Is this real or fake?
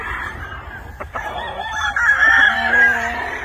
fake